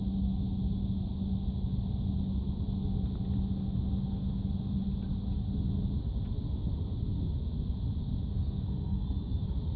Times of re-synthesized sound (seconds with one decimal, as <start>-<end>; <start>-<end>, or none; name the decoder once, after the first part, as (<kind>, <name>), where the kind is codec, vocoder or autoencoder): 8.3-9.4 (codec, SNAC)